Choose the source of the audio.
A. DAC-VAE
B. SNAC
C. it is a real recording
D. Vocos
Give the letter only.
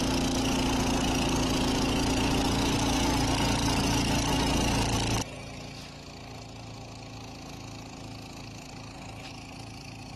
C